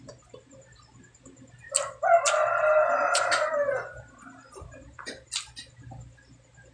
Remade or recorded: recorded